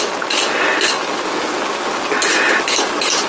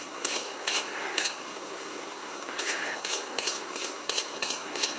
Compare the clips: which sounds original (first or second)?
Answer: first